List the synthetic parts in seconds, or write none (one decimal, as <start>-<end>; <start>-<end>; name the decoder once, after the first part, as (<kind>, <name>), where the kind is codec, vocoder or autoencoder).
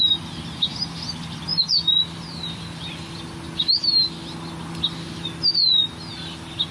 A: none